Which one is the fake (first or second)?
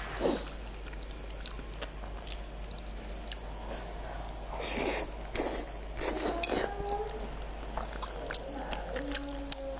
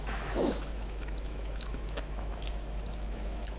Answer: second